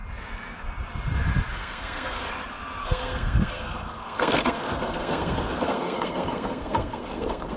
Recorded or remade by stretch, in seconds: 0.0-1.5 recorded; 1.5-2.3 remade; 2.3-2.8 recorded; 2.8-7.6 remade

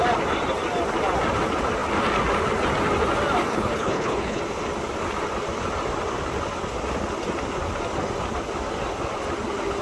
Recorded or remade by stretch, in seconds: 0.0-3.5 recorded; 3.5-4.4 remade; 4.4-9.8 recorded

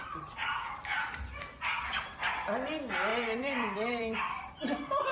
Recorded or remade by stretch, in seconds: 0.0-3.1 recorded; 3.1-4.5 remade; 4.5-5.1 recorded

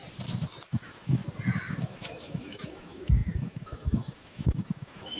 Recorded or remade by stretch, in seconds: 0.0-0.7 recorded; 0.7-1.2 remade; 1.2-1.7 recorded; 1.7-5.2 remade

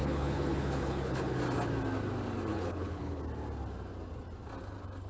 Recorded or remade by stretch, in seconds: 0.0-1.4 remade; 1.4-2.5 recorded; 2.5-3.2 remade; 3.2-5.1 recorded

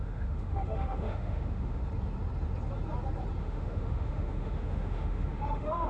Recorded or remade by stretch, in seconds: 0.0-1.8 remade; 1.8-3.4 recorded; 3.4-5.9 remade

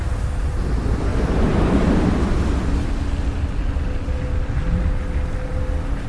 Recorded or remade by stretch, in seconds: 0.0-6.1 recorded